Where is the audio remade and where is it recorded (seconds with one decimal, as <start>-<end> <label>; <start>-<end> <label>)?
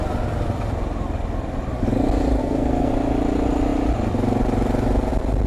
0.0-2.4 recorded; 2.4-2.9 remade; 2.9-5.5 recorded